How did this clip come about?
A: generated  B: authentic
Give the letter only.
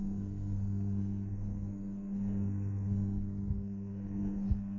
A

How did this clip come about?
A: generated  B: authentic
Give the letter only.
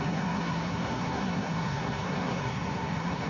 A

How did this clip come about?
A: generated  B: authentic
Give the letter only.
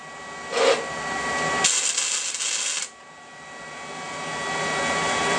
B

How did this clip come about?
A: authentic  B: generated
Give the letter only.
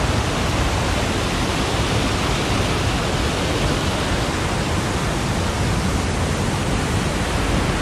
A